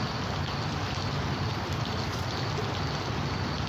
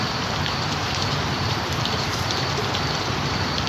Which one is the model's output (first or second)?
second